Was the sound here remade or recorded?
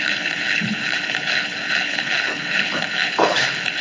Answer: remade